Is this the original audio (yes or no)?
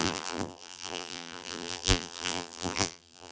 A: no